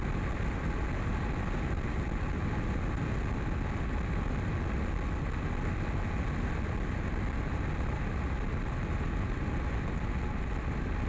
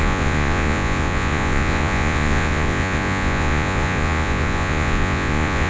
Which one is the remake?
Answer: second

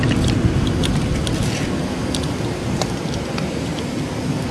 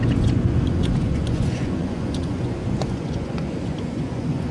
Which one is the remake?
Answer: second